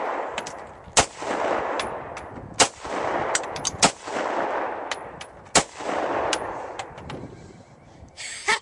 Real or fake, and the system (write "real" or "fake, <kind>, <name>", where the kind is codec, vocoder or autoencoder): real